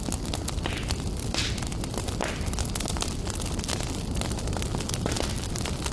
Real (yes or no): yes